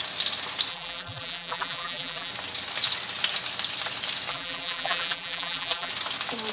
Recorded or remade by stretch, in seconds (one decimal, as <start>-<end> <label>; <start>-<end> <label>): 0.0-0.7 recorded; 0.7-2.3 remade; 2.3-4.3 recorded; 4.3-5.9 remade; 5.9-6.5 recorded